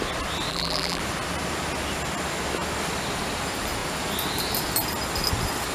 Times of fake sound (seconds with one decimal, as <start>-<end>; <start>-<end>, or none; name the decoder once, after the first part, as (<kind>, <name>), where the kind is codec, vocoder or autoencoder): 0.5-1.0 (vocoder, BigVGAN v2)